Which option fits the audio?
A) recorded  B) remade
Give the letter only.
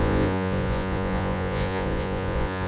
B